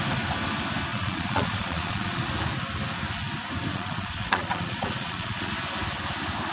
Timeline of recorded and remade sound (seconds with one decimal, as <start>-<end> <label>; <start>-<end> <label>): 0.0-0.9 recorded; 0.9-2.2 remade; 2.2-3.7 recorded; 3.7-5.5 remade; 5.5-6.5 recorded